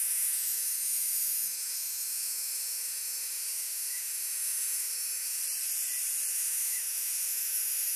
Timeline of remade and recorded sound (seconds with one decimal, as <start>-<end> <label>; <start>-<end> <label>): 0.0-5.4 remade; 5.4-6.3 recorded; 6.3-8.0 remade